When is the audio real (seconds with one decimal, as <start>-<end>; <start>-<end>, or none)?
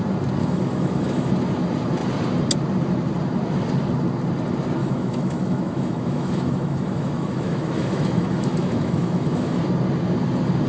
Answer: 0.0-0.4; 1.3-4.8; 9.6-10.7